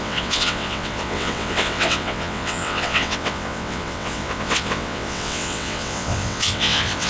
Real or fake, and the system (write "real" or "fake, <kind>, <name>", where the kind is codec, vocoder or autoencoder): fake, vocoder, WaveNeXt